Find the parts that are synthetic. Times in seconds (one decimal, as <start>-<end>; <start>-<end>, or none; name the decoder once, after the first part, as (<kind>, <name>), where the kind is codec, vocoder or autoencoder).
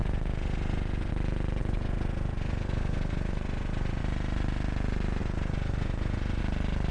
0.0-1.1 (vocoder, Vocos); 1.6-4.0; 5.2-6.4